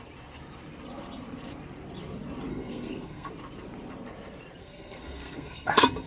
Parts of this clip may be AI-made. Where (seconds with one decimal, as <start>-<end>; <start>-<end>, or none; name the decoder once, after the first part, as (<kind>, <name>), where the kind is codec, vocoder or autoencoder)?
2.5-3.3 (codec, SNAC); 4.6-6.1